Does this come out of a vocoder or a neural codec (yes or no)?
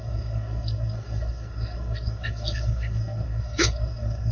yes